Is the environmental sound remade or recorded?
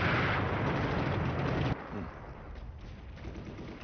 recorded